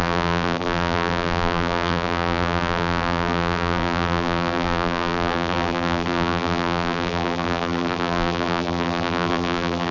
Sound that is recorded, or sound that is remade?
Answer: remade